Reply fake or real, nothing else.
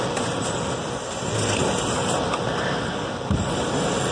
real